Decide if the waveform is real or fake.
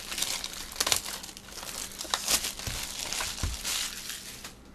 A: real